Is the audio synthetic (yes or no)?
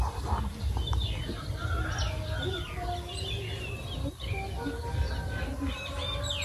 no